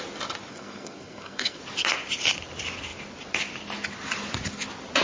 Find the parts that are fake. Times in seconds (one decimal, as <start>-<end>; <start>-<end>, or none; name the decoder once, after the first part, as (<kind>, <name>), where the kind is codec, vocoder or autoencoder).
0.5-1.6 (codec, SNAC)